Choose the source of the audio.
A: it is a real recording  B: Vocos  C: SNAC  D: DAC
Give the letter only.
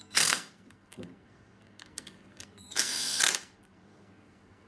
C